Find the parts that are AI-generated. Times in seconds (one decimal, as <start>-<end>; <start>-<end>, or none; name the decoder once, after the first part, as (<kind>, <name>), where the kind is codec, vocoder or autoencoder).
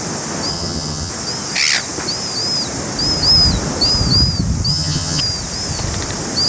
0.5-1.1 (vocoder, HiFi-GAN); 4.7-5.2